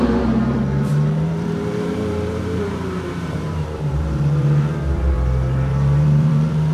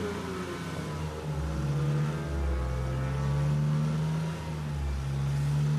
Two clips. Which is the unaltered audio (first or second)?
second